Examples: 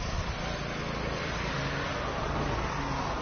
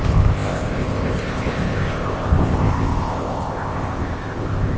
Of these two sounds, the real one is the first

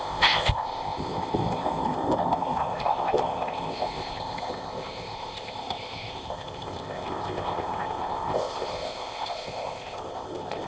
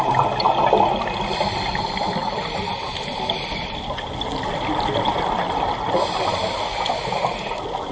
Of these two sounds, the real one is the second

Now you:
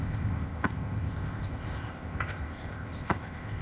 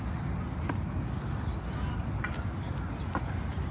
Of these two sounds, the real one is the second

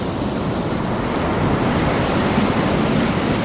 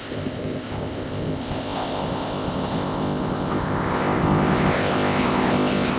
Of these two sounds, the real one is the first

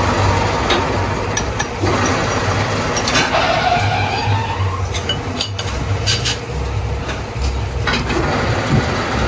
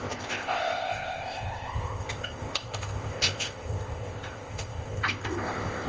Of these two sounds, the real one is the first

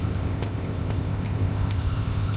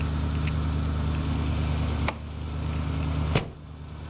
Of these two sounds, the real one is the second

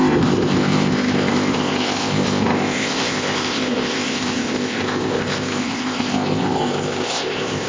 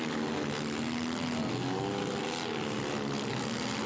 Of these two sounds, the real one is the second